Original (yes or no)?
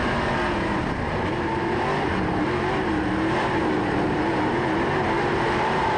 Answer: no